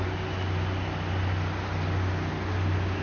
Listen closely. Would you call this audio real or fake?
real